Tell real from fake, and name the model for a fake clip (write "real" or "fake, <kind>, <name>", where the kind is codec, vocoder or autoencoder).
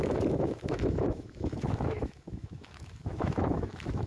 fake, autoencoder, DAC-VAE